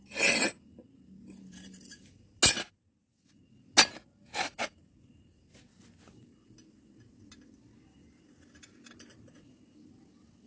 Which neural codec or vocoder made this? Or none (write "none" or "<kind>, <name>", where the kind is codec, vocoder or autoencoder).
none